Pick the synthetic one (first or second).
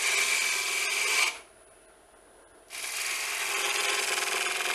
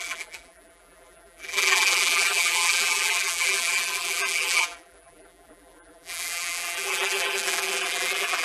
second